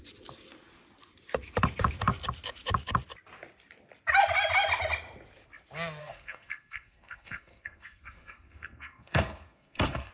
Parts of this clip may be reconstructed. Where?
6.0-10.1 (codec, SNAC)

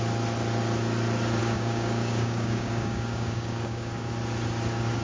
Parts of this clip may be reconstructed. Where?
1.4-4.1 (codec, DAC)

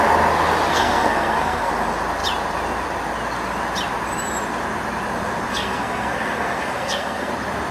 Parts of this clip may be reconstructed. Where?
0.7-1.7 (codec, SNAC); 5.5-7.3

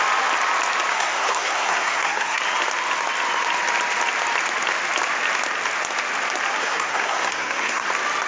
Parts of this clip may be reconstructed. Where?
0.9-2.4 (codec, SNAC); 6.6-7.9

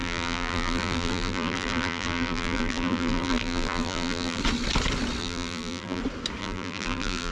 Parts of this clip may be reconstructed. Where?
0.0-4.4 (vocoder, BigVGAN v2); 5.2-6.0; 6.4-7.3

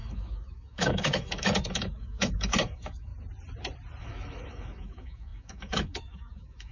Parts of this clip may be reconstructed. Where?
0.0-3.1 (autoencoder, DAC-VAE); 4.0-6.7